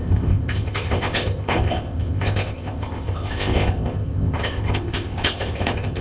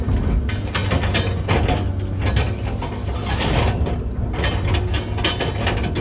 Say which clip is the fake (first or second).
first